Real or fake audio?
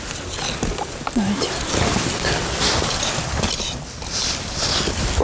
real